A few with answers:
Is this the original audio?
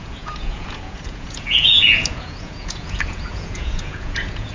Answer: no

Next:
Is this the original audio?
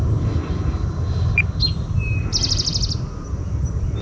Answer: yes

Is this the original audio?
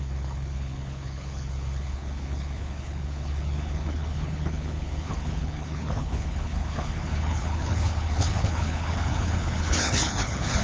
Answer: no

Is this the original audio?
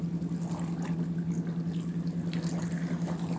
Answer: yes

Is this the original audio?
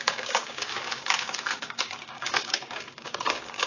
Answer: no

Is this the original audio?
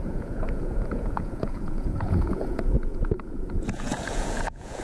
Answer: no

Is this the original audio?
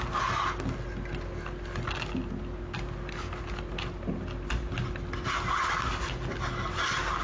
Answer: yes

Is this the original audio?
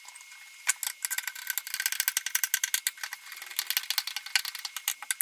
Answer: yes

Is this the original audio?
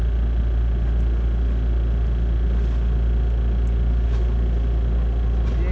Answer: yes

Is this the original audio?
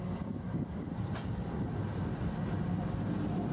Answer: yes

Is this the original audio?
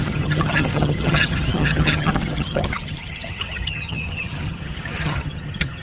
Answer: no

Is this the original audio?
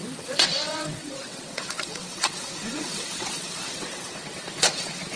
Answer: no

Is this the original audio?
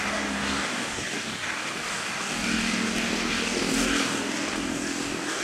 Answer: no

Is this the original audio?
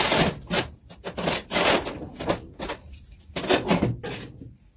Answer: yes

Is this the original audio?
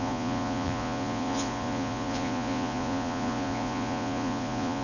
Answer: no